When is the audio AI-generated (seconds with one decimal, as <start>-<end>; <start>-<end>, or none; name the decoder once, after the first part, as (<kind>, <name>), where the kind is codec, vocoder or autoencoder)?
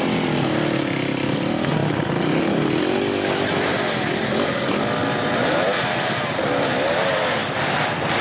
5.0-7.2 (vocoder, BigVGAN v2)